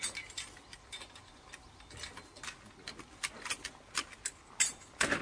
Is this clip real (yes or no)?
yes